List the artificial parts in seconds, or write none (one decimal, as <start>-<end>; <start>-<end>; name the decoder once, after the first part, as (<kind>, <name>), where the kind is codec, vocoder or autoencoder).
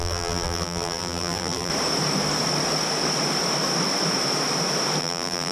0.0-1.7 (vocoder, BigVGAN v2); 5.0-5.5